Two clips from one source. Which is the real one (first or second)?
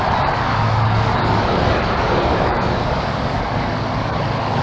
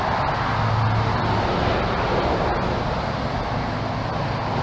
second